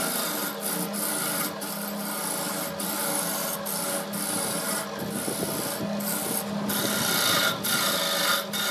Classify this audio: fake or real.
real